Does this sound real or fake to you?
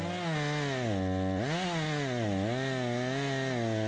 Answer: real